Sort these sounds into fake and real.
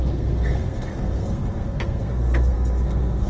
fake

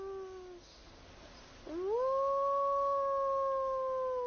real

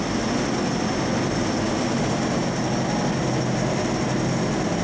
real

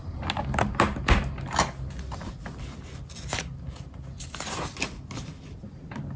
real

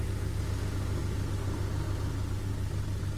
real